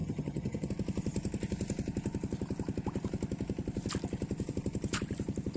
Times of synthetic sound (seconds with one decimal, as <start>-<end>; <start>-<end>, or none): 0.0-0.7